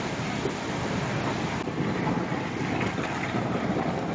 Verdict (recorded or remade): remade